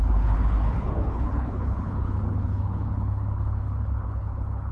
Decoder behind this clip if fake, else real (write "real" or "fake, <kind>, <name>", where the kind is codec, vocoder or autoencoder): fake, codec, HILCodec